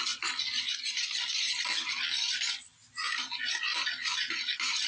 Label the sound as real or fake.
real